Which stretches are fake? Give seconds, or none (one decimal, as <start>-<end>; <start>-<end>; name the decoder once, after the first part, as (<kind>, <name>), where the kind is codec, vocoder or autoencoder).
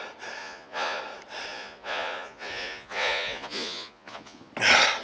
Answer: 0.4-1.0 (vocoder, Vocos); 1.5-4.5